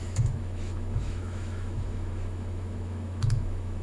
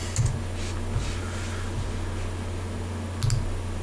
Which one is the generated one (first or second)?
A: first